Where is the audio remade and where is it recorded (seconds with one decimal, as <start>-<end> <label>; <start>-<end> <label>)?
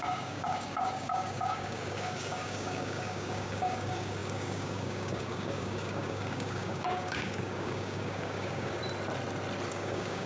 0.0-8.8 remade; 8.8-9.7 recorded; 9.7-10.3 remade